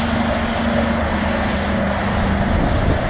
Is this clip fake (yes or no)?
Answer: no